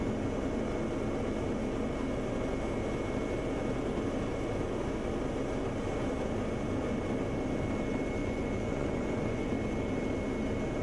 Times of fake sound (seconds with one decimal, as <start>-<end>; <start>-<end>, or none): 8.2-9.5